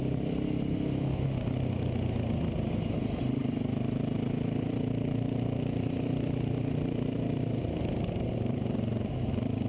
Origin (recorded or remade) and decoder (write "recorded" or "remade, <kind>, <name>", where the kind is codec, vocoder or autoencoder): recorded